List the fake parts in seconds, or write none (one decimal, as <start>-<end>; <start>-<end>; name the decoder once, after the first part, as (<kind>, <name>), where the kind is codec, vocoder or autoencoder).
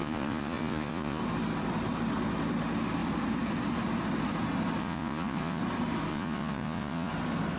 0.0-1.2 (vocoder, Vocos); 4.8-5.6; 6.1-7.1